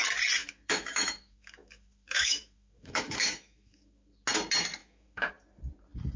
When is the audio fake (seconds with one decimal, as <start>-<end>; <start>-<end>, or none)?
0.4-4.1; 4.8-5.3